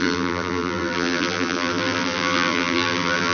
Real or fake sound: fake